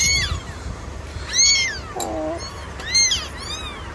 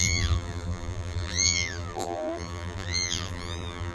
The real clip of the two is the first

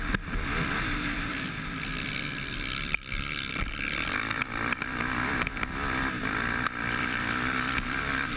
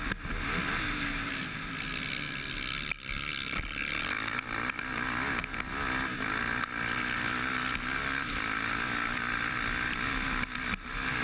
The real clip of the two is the second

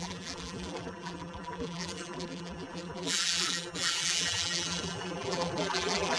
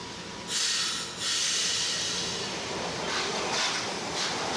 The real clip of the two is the second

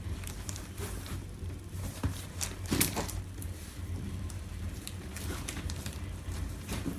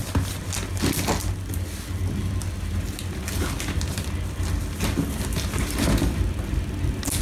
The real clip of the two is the second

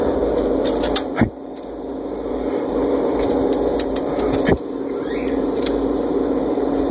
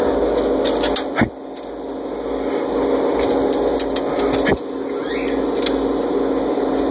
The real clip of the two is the second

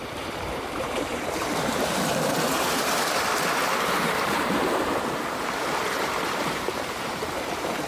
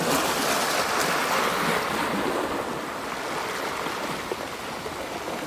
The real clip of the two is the second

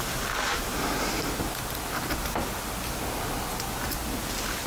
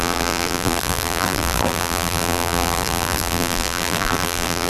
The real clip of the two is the first